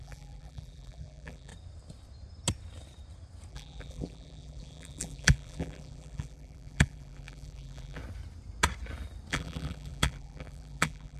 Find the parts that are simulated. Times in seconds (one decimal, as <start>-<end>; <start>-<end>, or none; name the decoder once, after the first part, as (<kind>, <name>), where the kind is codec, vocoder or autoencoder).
0.0-1.5 (vocoder, BigVGAN v2); 3.5-8.0; 9.3-11.2